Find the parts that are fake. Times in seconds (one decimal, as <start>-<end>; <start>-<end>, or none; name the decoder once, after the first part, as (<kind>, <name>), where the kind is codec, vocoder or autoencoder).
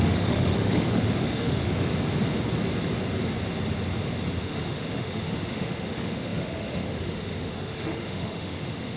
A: 0.0-1.9 (autoencoder, DAC-VAE); 4.4-9.0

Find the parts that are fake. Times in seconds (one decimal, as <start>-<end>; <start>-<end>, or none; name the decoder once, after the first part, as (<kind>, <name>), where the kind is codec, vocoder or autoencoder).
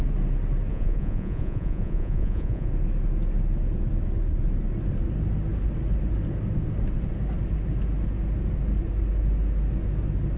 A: 0.7-2.7 (vocoder, Vocos)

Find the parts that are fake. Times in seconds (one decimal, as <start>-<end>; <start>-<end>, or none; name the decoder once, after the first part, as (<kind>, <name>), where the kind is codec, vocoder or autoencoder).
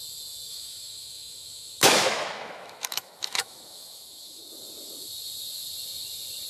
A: 0.5-4.4 (autoencoder, DAC-VAE)